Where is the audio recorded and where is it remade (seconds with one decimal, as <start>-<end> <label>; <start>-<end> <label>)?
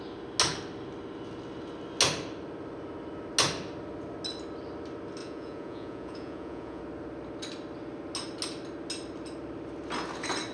0.0-5.2 recorded; 5.2-6.8 remade; 6.8-10.5 recorded